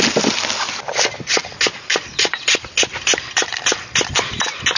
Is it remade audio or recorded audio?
recorded